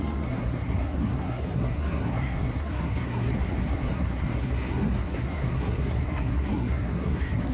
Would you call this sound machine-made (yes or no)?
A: yes